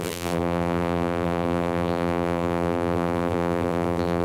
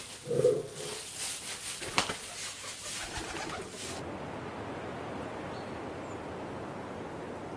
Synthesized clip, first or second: first